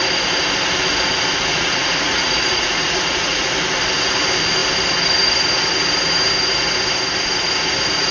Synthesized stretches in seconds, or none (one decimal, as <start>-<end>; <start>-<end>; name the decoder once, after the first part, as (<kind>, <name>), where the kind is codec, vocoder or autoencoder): 1.5-3.5 (vocoder, Vocos)